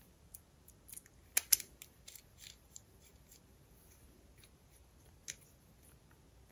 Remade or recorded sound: recorded